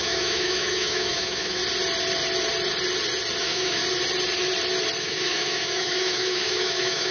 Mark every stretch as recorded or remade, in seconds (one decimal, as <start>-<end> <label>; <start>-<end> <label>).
0.0-1.6 remade; 1.6-3.4 recorded; 3.4-3.8 remade; 3.8-5.0 recorded; 5.0-7.1 remade